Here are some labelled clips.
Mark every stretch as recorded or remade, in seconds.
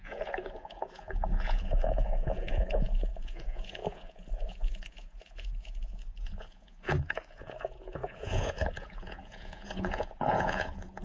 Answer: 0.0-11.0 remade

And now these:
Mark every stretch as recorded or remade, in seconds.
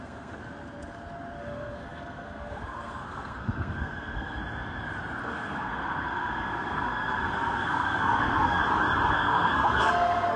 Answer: 0.0-0.4 remade; 0.4-1.4 recorded; 1.4-4.4 remade; 4.4-5.2 recorded; 5.2-8.6 remade; 8.6-9.1 recorded; 9.1-10.4 remade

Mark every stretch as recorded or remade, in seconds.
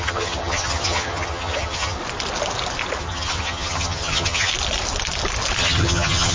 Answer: 0.0-2.0 remade; 2.0-3.0 recorded; 3.0-4.5 remade; 4.5-5.6 recorded; 5.6-6.3 remade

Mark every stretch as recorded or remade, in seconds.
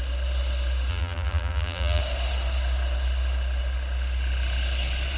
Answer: 0.0-0.9 recorded; 0.9-2.0 remade; 2.0-5.2 recorded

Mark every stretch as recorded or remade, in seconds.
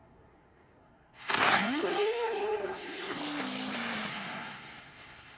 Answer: 0.0-3.2 remade; 3.2-4.1 recorded; 4.1-5.4 remade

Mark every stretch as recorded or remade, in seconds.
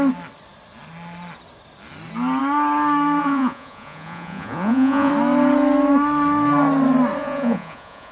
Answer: 0.0-3.2 recorded; 3.2-5.1 remade; 5.1-7.2 recorded; 7.2-8.1 remade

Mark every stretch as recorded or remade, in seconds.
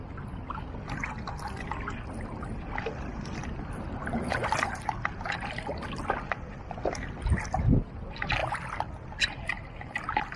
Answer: 0.0-10.4 recorded